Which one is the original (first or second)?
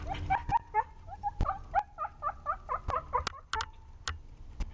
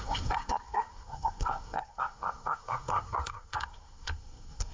first